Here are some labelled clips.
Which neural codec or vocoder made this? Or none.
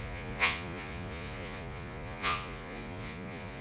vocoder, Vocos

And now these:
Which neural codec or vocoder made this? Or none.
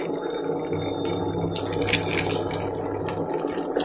none